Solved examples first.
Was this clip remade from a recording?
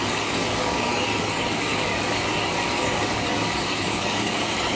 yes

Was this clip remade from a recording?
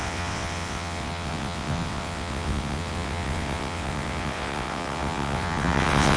yes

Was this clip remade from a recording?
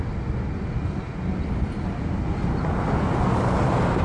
no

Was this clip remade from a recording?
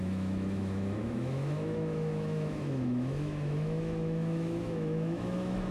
yes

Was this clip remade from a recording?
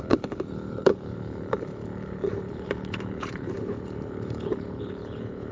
yes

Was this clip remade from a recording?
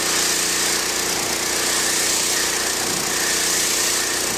no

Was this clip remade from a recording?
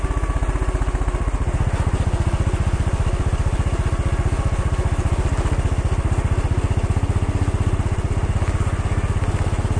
no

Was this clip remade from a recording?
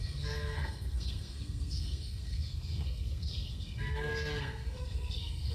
yes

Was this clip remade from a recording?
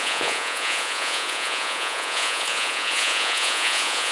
yes